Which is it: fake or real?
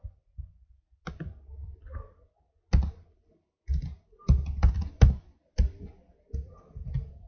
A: real